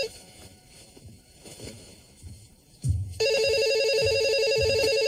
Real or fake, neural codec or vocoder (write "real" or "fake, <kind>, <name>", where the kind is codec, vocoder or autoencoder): fake, autoencoder, DAC-VAE